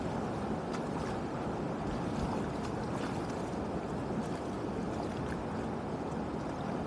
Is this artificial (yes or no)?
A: no